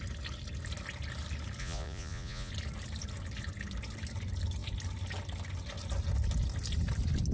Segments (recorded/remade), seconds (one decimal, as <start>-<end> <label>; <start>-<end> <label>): 0.0-1.6 recorded; 1.6-2.5 remade; 2.5-7.3 recorded